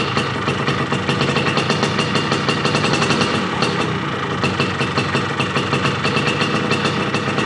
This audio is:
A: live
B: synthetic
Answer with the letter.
A